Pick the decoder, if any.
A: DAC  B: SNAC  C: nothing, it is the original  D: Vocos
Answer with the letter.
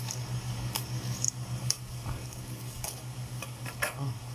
A